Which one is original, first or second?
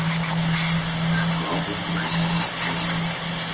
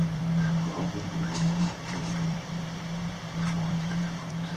first